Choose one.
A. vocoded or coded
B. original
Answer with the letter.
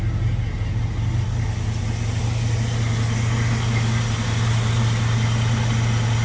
B